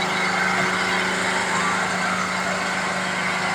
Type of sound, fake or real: real